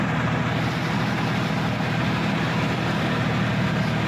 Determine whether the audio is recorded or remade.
recorded